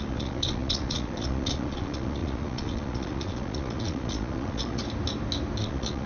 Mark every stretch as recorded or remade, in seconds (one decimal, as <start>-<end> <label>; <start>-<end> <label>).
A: 0.0-4.8 remade; 4.8-5.6 recorded; 5.6-6.1 remade